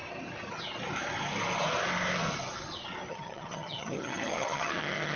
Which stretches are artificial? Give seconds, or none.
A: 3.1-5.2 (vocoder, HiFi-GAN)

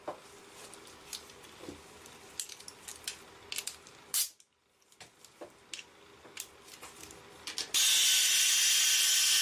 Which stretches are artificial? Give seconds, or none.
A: none

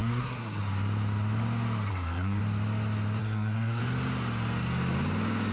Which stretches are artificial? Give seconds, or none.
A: 0.0-0.6 (codec, SNAC); 1.9-2.4; 3.2-3.8